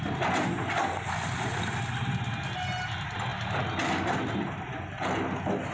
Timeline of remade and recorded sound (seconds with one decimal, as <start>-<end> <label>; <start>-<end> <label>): 0.0-5.7 recorded